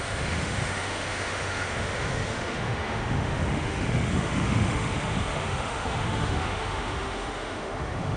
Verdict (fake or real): fake